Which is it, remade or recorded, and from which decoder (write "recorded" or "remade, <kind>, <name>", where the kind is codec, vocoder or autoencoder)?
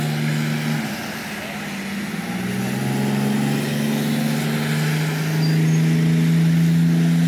recorded